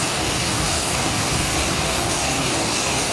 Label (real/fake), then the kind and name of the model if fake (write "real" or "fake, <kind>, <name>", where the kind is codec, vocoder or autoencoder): fake, codec, DAC